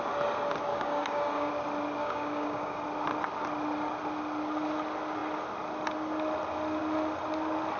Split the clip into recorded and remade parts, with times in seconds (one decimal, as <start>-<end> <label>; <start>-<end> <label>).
0.0-0.7 recorded; 0.7-1.5 remade; 1.5-2.0 recorded; 2.0-2.8 remade; 2.8-7.8 recorded